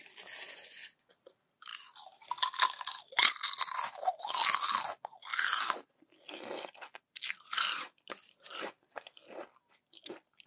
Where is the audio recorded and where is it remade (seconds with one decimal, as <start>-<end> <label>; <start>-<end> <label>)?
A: 0.0-0.5 recorded; 0.5-1.1 remade; 1.1-10.5 recorded